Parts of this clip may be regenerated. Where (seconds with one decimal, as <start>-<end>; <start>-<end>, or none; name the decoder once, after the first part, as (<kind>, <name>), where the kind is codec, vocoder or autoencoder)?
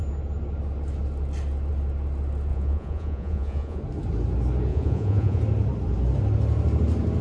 2.5-3.8 (vocoder, Vocos); 4.7-5.4